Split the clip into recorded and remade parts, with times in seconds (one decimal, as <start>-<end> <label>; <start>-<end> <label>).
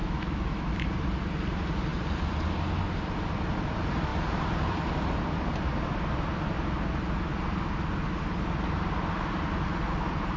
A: 0.0-0.7 remade; 0.7-10.4 recorded